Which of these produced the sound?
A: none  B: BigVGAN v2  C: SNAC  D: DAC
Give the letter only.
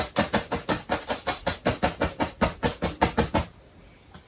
A